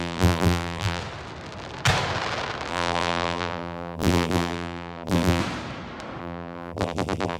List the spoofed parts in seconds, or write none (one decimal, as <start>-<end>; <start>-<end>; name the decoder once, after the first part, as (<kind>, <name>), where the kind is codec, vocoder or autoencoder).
0.0-1.0 (vocoder, BigVGAN v2); 2.7-5.4; 6.2-7.4

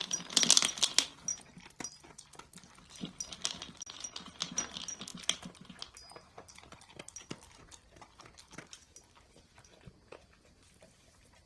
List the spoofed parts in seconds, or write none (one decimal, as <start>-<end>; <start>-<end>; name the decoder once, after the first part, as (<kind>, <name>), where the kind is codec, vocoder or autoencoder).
none

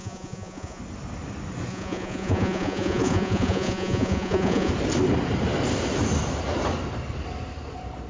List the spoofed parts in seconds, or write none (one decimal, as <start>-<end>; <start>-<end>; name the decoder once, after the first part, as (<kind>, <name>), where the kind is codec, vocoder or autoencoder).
0.0-0.8 (vocoder, Vocos); 1.7-4.7

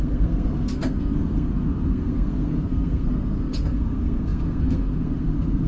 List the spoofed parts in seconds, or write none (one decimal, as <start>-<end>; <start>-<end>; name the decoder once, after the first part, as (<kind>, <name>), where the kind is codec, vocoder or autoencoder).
0.0-5.7 (codec, SNAC)